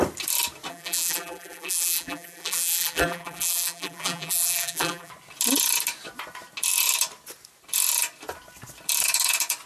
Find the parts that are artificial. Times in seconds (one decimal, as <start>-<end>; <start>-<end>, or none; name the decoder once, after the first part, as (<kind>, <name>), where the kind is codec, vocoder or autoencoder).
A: 0.7-5.1 (vocoder, BigVGAN v2)